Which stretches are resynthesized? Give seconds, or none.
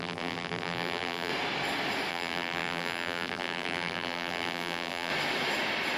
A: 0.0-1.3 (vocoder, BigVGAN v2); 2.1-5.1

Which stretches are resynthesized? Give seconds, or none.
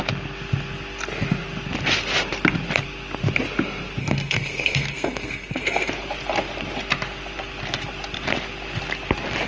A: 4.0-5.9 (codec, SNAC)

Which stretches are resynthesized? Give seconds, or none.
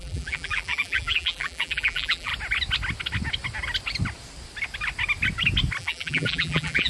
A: 0.0-2.3 (vocoder, BigVGAN v2); 5.8-6.9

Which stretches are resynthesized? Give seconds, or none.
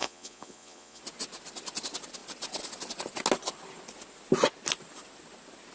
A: 0.0-1.0 (vocoder, Vocos)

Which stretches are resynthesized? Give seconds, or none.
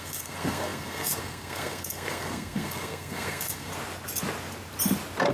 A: 0.0-3.7 (codec, SNAC)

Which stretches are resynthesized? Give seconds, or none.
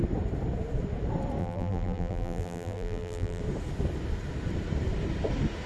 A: 1.4-3.4 (vocoder, BigVGAN v2)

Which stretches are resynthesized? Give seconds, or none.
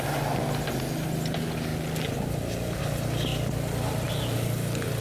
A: 3.3-3.9 (vocoder, BigVGAN v2)